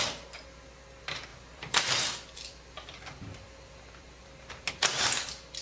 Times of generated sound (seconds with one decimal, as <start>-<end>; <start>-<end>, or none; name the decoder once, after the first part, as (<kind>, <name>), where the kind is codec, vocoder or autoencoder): 1.3-4.7 (vocoder, BigVGAN v2)